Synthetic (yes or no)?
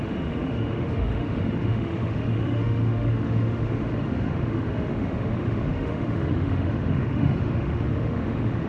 yes